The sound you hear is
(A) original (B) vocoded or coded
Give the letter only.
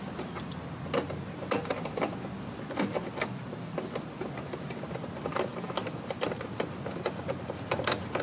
A